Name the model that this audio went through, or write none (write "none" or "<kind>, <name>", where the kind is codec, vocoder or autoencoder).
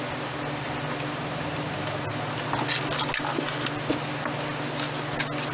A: none